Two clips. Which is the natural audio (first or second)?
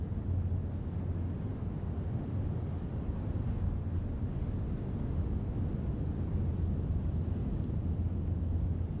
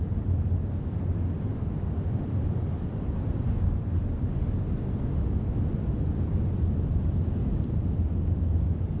first